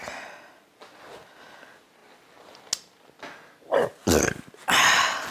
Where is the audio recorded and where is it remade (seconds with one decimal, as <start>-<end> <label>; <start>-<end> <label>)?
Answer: 0.0-5.3 recorded